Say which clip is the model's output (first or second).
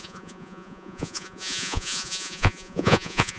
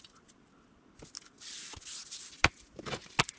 first